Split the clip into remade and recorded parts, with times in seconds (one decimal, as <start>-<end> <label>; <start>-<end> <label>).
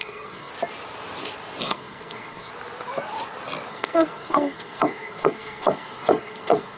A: 0.0-0.5 remade; 0.5-1.6 recorded; 1.6-2.5 remade; 2.5-3.7 recorded; 3.7-6.8 remade